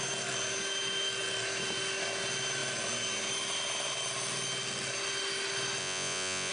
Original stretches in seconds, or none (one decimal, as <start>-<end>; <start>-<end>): 0.0-5.8